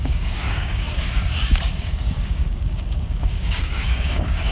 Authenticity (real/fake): fake